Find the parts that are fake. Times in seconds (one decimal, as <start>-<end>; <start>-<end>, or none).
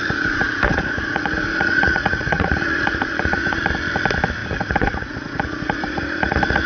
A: 0.0-3.6; 4.4-6.7